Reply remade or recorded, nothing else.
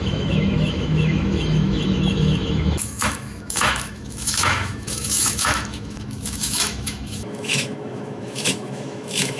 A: remade